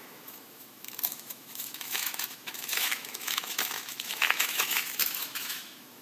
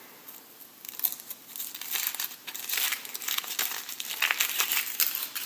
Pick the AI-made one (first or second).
first